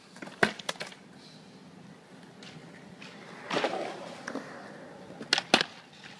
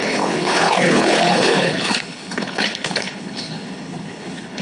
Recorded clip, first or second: first